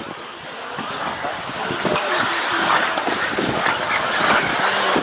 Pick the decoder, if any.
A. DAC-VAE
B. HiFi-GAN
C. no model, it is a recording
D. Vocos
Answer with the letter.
C